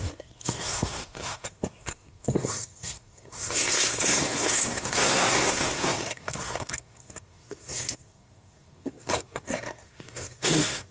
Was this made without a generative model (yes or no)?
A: no